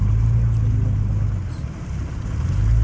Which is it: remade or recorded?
recorded